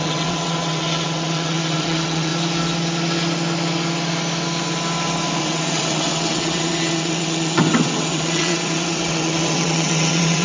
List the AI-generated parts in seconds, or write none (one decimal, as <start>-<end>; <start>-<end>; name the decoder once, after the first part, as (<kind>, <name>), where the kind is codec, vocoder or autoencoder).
0.0-2.3 (vocoder, WaveNeXt); 5.4-10.4